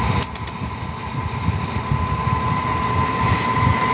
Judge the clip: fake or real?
real